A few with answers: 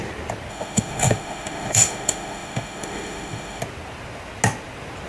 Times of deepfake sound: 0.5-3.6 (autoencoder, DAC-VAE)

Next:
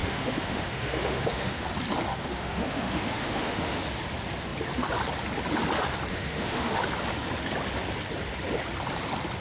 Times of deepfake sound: 0.0-1.7 (autoencoder, DAC-VAE); 2.1-3.8; 6.1-6.8

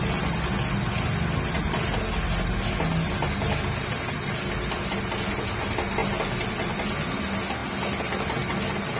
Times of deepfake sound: none

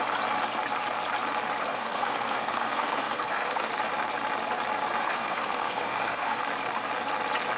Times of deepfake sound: 1.6-3.7 (codec, SNAC); 5.0-6.4